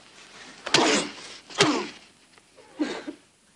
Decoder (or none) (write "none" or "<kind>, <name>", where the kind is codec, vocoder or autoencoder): none